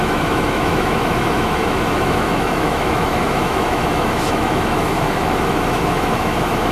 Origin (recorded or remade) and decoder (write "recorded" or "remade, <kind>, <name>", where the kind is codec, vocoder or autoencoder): remade, autoencoder, DAC-VAE